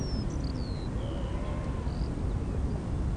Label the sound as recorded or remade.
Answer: recorded